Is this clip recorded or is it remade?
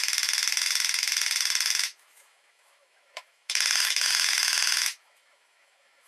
remade